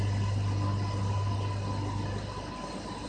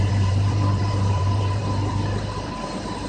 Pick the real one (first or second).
first